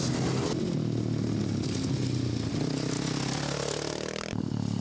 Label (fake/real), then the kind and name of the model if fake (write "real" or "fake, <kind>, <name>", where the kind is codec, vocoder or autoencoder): real